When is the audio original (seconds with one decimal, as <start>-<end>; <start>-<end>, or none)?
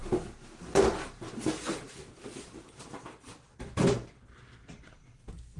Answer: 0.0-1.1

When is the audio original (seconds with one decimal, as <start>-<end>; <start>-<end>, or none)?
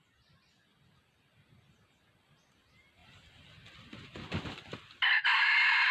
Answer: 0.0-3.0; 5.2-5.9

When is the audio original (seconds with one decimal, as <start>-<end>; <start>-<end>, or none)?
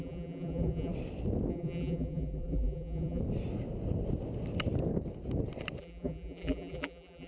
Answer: 0.9-1.5; 3.2-5.8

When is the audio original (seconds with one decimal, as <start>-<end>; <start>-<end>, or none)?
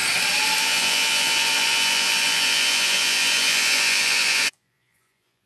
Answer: 0.0-0.6